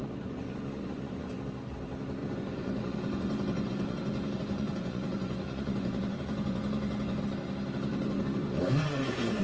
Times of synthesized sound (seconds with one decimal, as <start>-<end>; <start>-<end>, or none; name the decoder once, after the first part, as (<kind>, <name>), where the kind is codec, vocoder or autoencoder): 0.0-1.4 (vocoder, Vocos); 2.2-7.2; 7.9-9.4